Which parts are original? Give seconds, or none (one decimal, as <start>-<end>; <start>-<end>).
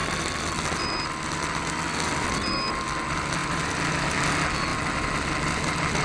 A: 0.0-6.0